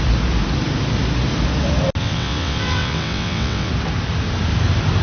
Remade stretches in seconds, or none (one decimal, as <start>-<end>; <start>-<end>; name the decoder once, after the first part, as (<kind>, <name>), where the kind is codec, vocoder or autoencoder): 2.0-3.7 (vocoder, WaveNeXt)